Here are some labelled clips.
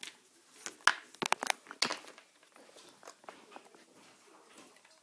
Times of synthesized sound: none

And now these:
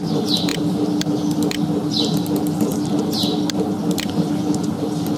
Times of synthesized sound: none

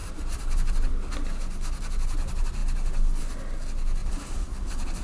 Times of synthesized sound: 0.0-0.9 (vocoder, BigVGAN v2); 4.0-5.0

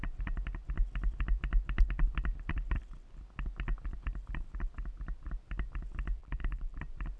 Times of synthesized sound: 6.2-6.8 (vocoder, BigVGAN v2)

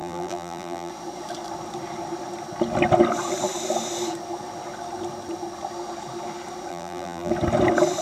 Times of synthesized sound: 0.0-0.9 (vocoder, BigVGAN v2); 6.7-7.3

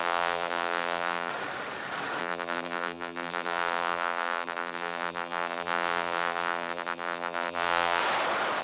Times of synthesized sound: 0.0-1.3 (vocoder, BigVGAN v2); 2.2-8.0

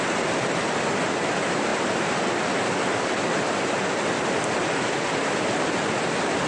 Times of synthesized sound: 0.0-1.7 (vocoder, BigVGAN v2); 5.6-6.5

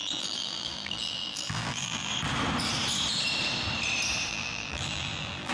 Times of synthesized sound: 0.0-2.1 (vocoder, BigVGAN v2); 4.3-5.5